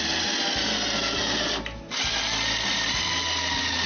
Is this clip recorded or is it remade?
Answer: recorded